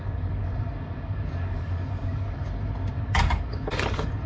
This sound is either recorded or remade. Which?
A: remade